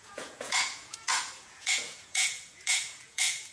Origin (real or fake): fake